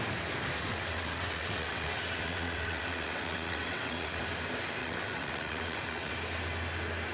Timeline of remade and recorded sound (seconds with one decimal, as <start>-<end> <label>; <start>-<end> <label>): 0.0-0.7 recorded; 0.7-4.2 remade; 4.2-4.8 recorded; 4.8-6.1 remade; 6.1-7.1 recorded